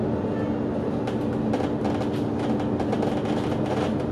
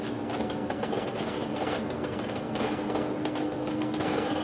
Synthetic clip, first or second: second